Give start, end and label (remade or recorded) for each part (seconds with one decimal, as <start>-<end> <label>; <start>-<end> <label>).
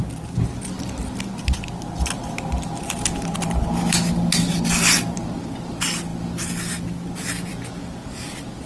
0.0-8.7 recorded